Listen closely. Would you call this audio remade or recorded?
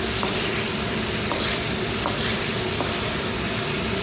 recorded